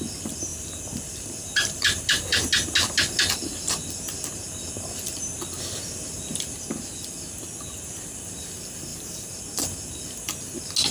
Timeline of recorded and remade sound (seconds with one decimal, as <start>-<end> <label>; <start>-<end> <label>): 0.0-0.5 recorded; 0.5-2.4 remade; 2.4-8.9 recorded; 8.9-9.4 remade; 9.4-10.9 recorded